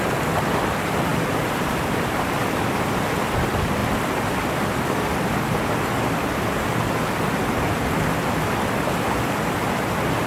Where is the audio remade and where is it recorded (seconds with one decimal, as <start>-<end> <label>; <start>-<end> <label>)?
0.0-1.1 recorded; 1.1-2.4 remade; 2.4-10.3 recorded